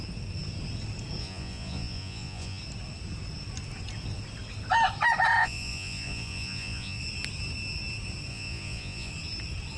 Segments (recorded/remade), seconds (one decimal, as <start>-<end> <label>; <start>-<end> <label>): 0.0-1.2 recorded; 1.2-2.6 remade; 2.6-5.4 recorded; 5.4-7.0 remade; 7.0-8.3 recorded; 8.3-9.1 remade; 9.1-9.8 recorded